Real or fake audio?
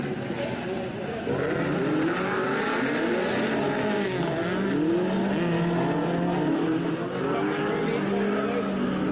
real